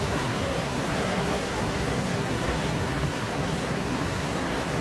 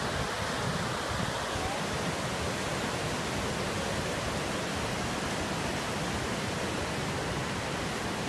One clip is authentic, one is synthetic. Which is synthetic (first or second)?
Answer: first